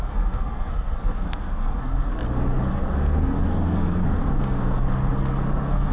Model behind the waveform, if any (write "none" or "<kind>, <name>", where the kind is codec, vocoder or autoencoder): codec, SNAC